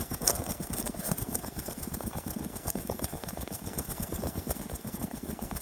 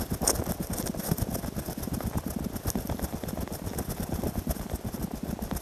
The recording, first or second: second